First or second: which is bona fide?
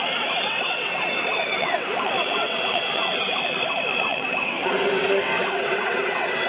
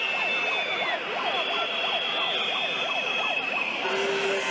second